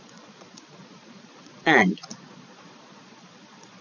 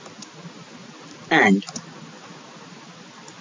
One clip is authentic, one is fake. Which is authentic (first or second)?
second